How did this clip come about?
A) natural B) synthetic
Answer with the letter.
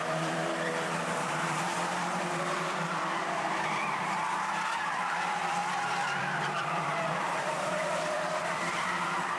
B